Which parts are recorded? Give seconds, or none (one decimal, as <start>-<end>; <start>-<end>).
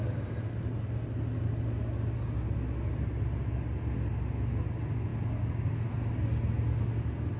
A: 0.0-7.4